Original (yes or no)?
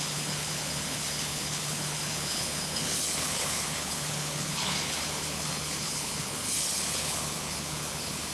no